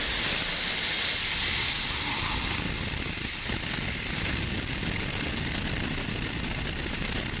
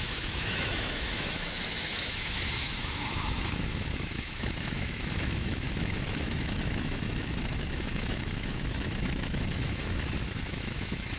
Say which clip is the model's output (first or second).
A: second